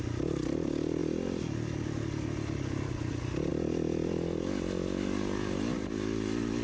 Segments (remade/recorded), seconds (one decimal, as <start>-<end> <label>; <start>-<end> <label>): 0.0-6.6 recorded